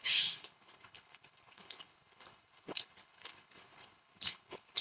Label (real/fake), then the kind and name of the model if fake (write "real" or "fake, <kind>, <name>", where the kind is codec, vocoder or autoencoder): fake, codec, HILCodec